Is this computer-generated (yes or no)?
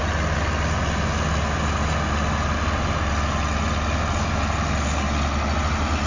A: no